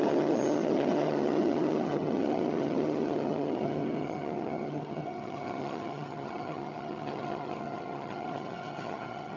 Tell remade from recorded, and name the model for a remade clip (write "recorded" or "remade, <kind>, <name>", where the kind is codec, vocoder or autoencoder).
remade, vocoder, HiFi-GAN